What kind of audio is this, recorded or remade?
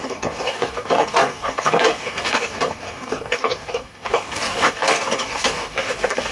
remade